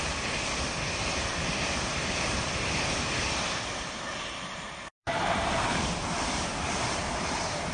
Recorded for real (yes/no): no